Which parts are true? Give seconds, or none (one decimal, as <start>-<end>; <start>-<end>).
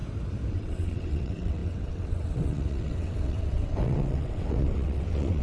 0.0-0.5